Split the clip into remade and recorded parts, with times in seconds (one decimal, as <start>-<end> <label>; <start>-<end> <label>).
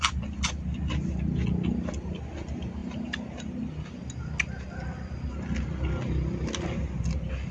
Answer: 0.0-7.5 recorded